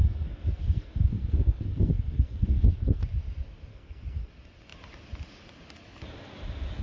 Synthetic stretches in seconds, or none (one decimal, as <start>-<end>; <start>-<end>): 0.0-3.0; 3.7-4.3